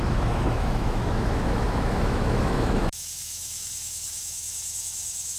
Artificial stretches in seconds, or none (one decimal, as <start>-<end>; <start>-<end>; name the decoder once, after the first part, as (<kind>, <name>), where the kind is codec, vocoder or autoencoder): 0.0-5.4 (autoencoder, DAC-VAE)